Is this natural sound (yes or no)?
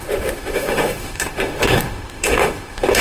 no